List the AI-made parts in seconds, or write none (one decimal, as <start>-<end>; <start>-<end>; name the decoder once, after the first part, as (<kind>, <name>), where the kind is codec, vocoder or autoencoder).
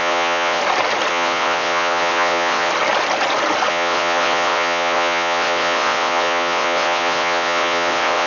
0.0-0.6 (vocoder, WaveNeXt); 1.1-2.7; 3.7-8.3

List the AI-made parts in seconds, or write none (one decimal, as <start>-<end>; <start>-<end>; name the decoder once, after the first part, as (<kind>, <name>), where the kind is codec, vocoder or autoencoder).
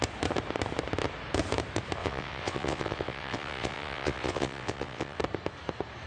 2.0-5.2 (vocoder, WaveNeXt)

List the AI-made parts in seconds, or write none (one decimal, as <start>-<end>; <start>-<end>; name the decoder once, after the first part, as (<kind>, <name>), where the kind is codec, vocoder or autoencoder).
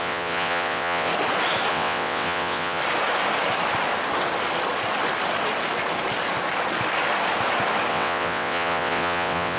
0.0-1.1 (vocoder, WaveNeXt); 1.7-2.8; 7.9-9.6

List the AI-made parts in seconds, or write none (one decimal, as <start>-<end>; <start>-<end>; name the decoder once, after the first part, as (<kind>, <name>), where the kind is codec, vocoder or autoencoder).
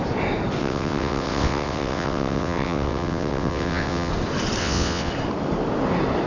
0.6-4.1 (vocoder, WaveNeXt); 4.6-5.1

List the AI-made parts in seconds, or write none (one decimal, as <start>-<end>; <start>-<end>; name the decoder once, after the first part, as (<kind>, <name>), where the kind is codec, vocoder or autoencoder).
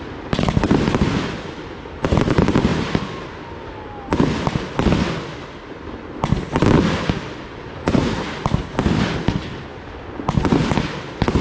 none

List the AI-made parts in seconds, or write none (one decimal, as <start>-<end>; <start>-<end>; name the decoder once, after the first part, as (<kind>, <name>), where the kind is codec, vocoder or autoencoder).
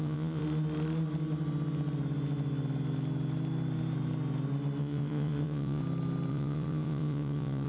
0.0-0.4 (vocoder, WaveNeXt); 4.8-5.8; 6.3-7.7